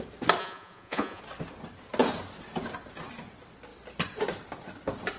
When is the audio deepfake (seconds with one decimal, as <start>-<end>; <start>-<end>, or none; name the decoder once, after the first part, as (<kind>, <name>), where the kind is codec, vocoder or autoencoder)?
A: 0.4-1.2 (vocoder, Vocos)